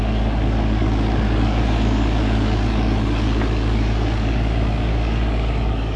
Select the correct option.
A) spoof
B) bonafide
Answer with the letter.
A